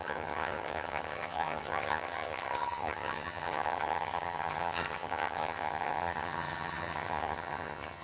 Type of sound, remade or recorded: remade